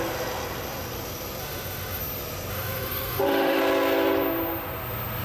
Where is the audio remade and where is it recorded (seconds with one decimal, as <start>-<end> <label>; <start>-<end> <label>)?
0.0-1.4 recorded; 1.4-2.0 remade; 2.0-2.5 recorded; 2.5-3.6 remade; 3.6-5.2 recorded